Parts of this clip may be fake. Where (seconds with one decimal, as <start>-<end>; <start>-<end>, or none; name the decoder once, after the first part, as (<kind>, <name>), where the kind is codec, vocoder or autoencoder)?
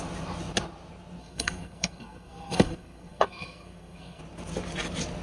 1.2-4.2 (codec, SNAC)